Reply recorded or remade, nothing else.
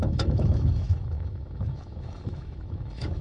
remade